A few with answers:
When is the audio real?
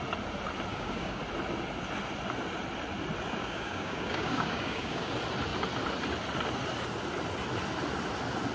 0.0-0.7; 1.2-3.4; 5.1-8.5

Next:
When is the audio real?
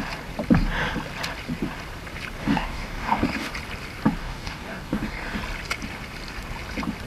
0.0-2.4; 3.5-4.2; 5.4-7.1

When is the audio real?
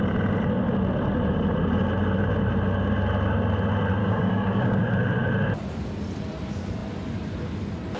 0.0-4.0; 4.8-8.0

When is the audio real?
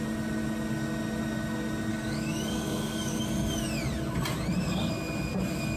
0.0-1.9; 3.2-5.8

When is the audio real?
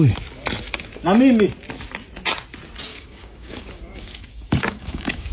0.0-2.9